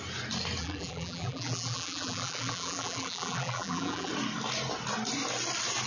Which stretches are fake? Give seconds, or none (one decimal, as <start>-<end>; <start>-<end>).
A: 0.6-4.1

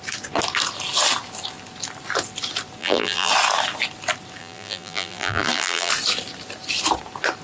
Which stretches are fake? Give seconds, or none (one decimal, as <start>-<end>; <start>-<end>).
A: 2.8-3.3; 4.4-5.9

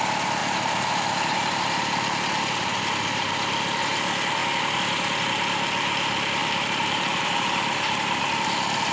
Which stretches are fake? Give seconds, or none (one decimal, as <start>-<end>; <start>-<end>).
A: 0.4-2.8; 6.4-8.2

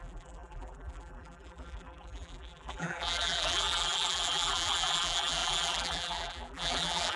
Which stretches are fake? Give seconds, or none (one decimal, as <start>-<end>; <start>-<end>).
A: 0.0-7.2

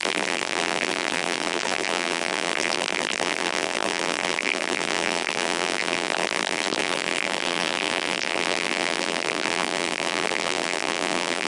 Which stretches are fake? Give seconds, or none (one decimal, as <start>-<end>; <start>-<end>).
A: 0.0-11.5

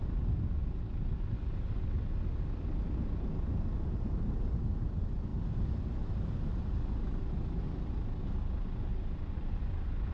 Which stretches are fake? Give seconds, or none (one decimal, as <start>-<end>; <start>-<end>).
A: 5.3-6.0; 8.9-9.6

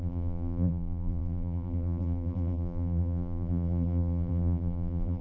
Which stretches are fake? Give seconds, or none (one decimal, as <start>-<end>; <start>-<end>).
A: 0.0-5.2

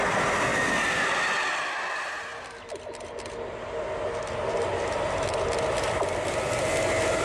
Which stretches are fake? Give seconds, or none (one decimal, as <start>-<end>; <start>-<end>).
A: none